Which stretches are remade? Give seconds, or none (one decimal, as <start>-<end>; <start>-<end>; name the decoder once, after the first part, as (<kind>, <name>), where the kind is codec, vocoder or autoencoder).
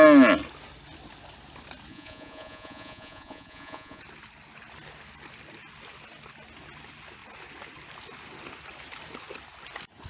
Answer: 1.9-4.0 (vocoder, Vocos)